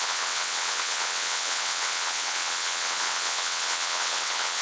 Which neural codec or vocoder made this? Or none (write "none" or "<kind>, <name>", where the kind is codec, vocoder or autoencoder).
vocoder, WaveNeXt